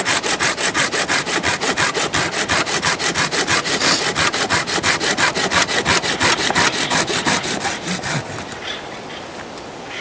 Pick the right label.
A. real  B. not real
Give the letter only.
A